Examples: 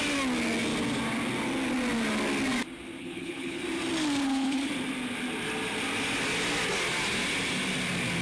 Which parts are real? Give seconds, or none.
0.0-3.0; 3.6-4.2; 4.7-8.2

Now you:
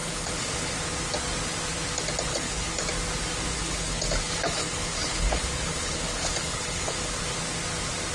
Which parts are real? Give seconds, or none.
0.7-2.3; 2.9-3.5; 7.1-8.1